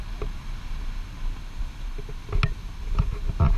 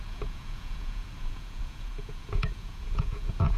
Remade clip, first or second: second